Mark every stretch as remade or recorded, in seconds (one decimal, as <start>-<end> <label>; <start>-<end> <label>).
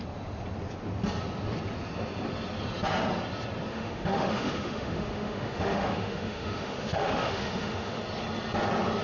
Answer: 0.0-3.7 recorded; 3.7-8.0 remade; 8.0-9.0 recorded